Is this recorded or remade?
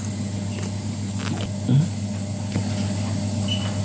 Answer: recorded